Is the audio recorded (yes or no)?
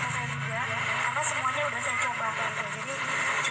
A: yes